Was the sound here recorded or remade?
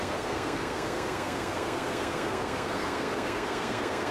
remade